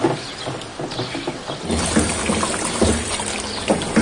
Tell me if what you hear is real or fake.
real